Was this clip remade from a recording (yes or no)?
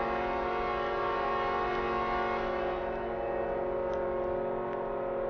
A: no